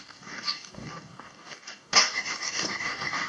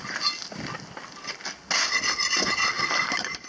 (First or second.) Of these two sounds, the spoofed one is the first